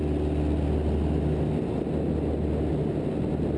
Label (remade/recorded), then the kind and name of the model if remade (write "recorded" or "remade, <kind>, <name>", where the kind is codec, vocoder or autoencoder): recorded